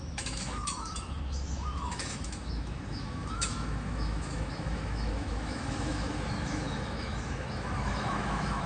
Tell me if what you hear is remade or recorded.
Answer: remade